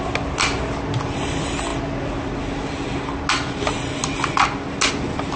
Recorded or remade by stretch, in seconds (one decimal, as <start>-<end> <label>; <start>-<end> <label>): 0.0-5.4 recorded